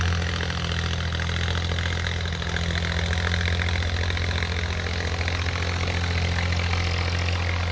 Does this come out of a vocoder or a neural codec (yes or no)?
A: no